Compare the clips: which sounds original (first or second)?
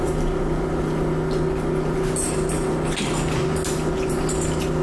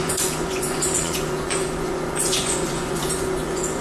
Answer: first